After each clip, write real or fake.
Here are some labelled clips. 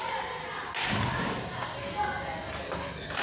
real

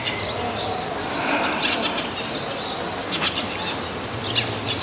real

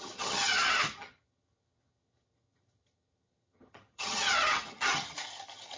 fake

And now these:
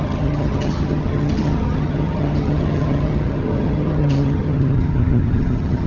fake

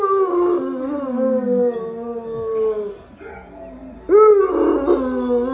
real